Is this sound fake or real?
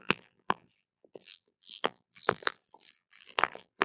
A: fake